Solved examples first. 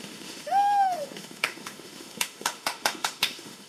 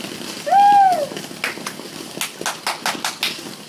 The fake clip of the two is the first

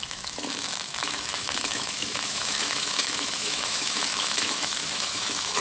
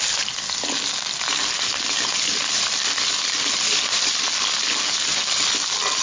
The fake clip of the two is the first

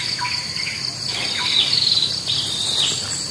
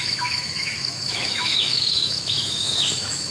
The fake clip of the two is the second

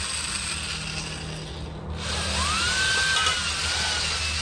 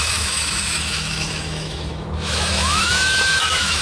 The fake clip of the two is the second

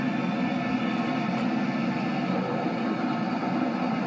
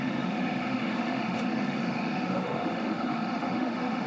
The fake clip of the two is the second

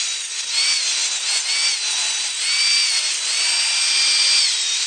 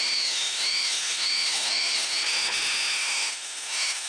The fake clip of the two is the second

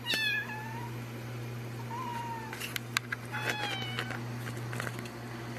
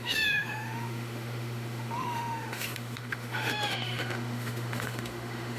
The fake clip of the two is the second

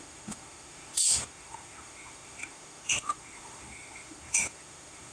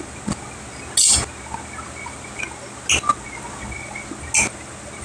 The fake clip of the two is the first